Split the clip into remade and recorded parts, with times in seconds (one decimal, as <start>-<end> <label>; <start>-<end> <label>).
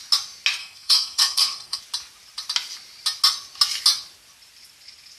0.0-0.6 recorded; 0.6-1.8 remade; 1.8-5.2 recorded